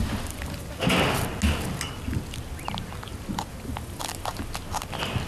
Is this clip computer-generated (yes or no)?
no